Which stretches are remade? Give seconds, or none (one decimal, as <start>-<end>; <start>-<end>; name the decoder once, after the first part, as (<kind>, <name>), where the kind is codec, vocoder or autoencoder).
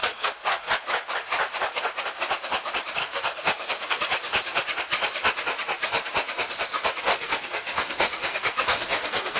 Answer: 0.0-0.7 (codec, SNAC); 3.0-4.0; 7.1-9.4